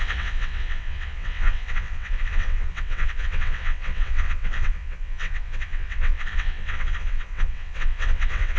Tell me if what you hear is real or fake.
fake